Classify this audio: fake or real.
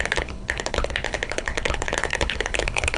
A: fake